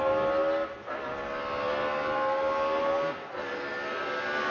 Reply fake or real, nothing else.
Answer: real